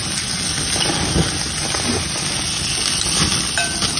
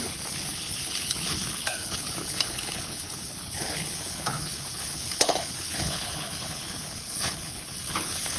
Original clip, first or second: first